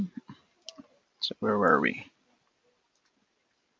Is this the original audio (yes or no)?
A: yes